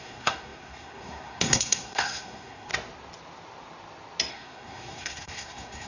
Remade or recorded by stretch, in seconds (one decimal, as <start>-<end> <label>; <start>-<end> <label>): 0.0-2.7 remade; 2.7-4.3 recorded; 4.3-5.9 remade